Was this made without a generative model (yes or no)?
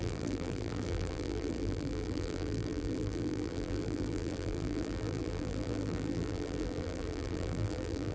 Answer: no